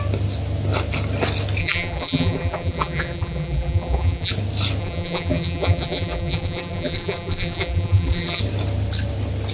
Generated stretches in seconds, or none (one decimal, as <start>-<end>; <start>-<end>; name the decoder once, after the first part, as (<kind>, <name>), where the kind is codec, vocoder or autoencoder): 1.6-4.3 (vocoder, BigVGAN v2); 4.8-8.4